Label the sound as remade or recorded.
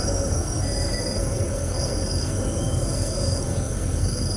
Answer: remade